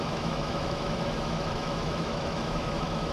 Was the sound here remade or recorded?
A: remade